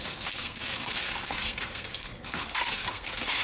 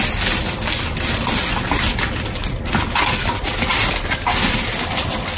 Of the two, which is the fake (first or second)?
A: first